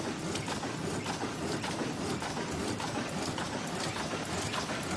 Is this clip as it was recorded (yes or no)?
yes